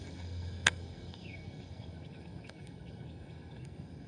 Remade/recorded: remade